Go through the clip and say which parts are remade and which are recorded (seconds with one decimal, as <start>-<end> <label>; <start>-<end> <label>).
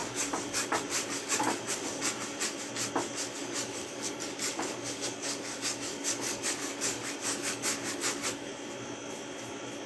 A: 0.0-2.0 remade; 2.0-3.4 recorded; 3.4-8.5 remade; 8.5-9.9 recorded